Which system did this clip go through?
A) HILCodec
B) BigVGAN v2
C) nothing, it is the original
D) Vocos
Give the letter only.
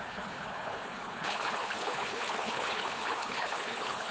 A